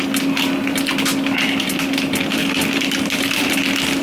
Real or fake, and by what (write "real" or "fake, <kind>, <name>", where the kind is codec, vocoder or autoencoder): real